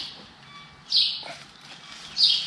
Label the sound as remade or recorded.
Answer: recorded